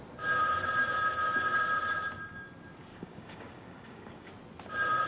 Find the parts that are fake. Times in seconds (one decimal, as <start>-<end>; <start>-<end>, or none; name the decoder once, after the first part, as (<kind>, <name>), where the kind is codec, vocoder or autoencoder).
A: 2.9-4.3 (codec, DAC)